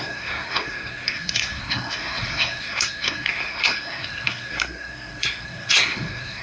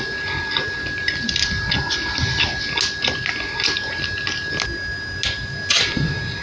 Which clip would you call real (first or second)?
second